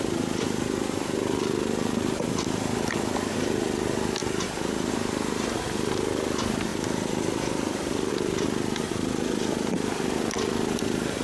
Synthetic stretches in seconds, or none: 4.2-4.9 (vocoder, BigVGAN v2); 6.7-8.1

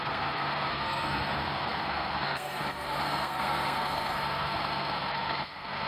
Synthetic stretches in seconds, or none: 0.0-5.9 (codec, SNAC)